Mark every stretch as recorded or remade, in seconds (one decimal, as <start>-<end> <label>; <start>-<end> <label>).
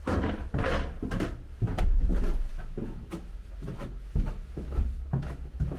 0.0-2.5 recorded; 2.5-5.8 remade